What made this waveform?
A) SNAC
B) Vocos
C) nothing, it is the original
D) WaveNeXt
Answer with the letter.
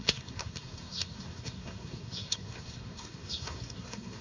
A